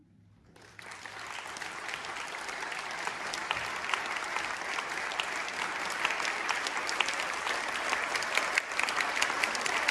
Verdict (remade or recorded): remade